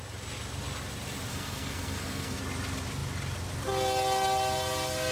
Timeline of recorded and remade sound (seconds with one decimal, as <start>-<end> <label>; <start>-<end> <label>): 0.0-1.3 recorded; 1.3-2.4 remade; 2.4-5.1 recorded